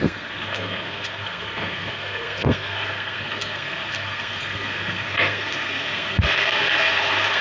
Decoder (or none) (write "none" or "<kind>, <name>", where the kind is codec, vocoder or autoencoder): codec, SNAC